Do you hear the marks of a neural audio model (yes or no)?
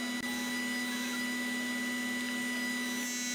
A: no